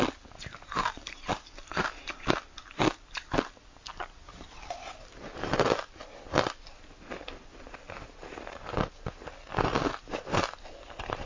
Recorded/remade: recorded